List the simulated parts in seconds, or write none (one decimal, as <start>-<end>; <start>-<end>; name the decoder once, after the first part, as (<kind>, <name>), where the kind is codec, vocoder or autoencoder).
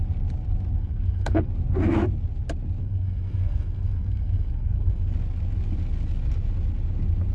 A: 0.8-1.5 (codec, SNAC); 2.8-5.1